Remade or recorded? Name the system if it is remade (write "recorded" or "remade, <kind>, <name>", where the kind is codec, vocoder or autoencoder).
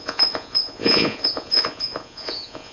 remade, vocoder, Vocos